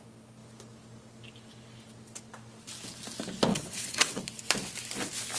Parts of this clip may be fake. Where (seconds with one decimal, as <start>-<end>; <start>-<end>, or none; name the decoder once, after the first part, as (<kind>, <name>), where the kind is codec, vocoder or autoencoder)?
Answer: 3.5-4.2 (vocoder, WaveNeXt)